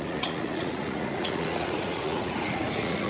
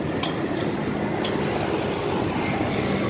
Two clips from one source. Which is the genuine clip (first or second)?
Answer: second